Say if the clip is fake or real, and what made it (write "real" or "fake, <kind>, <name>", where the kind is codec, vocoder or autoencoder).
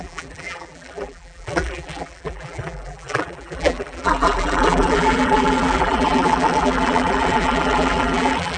fake, vocoder, BigVGAN v2